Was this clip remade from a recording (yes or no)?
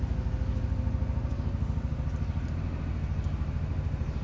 no